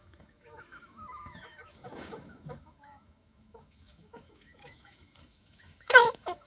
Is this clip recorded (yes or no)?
no